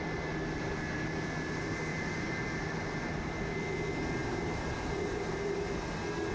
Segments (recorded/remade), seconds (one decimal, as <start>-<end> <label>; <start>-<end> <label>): 0.0-1.9 recorded; 1.9-3.3 remade; 3.3-4.2 recorded; 4.2-5.2 remade; 5.2-6.3 recorded